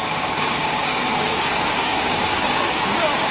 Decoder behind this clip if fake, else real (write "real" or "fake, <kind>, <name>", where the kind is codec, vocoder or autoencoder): fake, codec, DAC